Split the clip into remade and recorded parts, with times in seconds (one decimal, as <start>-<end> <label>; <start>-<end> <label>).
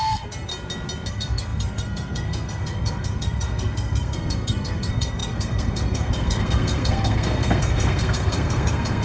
0.0-0.5 remade; 0.5-1.1 recorded; 1.1-9.0 remade